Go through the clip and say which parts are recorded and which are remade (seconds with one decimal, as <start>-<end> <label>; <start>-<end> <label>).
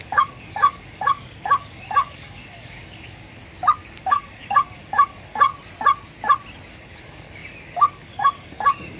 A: 0.0-3.4 remade; 3.4-4.0 recorded; 4.0-5.5 remade; 5.5-6.7 recorded; 6.7-9.0 remade